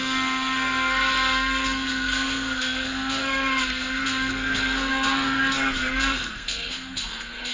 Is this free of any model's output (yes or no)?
no